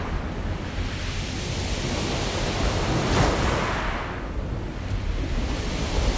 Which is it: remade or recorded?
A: recorded